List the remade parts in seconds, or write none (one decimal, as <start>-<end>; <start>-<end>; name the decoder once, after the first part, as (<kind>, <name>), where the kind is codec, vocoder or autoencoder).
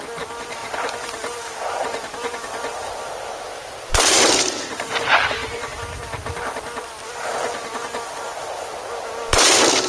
0.6-3.9 (vocoder, BigVGAN v2); 5.4-7.1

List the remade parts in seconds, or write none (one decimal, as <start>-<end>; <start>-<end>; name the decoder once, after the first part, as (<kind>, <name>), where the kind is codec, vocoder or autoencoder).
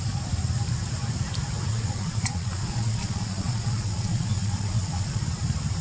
1.7-5.2 (vocoder, Vocos)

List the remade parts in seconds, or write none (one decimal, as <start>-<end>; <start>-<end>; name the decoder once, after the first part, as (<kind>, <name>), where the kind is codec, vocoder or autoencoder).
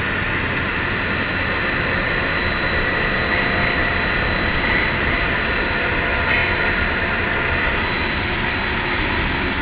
none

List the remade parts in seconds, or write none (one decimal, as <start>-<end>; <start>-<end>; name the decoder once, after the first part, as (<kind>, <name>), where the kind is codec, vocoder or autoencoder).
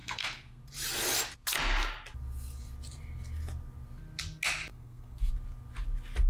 0.0-0.6 (codec, SNAC); 4.7-5.3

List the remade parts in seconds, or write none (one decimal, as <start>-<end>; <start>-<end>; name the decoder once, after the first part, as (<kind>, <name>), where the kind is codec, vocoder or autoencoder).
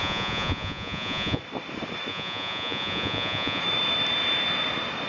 0.0-1.4 (vocoder, Vocos); 2.1-3.6